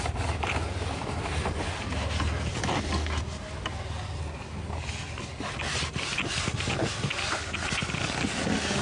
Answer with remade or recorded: recorded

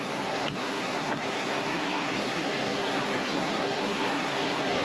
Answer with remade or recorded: remade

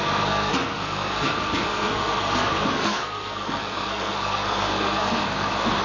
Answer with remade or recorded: remade